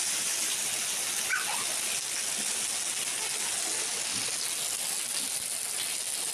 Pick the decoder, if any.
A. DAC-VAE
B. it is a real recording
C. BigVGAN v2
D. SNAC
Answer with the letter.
B